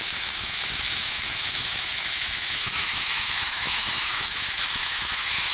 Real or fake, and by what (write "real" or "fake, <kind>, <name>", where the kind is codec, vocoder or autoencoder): fake, autoencoder, DAC-VAE